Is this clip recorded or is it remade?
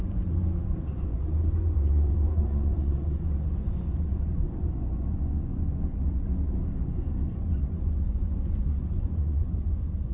remade